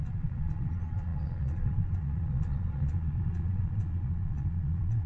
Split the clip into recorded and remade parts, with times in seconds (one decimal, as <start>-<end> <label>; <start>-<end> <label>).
0.0-5.1 remade